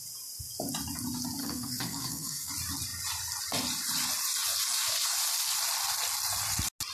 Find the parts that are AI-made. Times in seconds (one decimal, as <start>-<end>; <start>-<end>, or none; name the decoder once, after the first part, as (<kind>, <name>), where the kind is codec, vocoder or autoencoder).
1.4-2.5 (codec, SNAC)